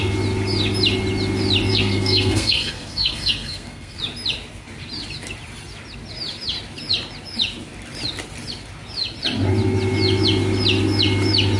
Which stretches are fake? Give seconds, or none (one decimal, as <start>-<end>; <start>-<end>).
1.7-4.0